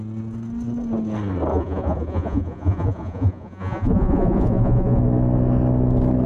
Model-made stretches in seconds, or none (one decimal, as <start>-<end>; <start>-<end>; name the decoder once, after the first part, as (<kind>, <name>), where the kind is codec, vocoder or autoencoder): 1.5-5.0 (vocoder, Vocos)